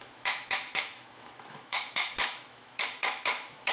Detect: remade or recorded remade